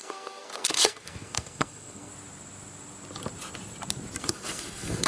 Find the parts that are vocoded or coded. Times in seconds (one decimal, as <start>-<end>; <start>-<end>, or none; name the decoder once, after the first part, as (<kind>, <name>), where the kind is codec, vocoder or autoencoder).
0.0-2.1 (codec, SNAC); 4.2-5.1